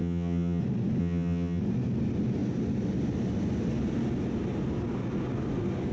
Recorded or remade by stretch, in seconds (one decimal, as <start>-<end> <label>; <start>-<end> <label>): 0.0-0.6 remade; 0.6-1.0 recorded; 1.0-1.6 remade; 1.6-5.9 recorded